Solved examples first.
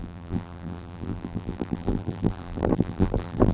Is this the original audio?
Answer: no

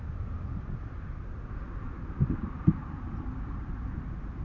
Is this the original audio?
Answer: no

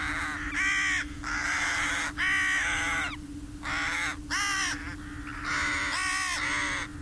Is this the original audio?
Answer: yes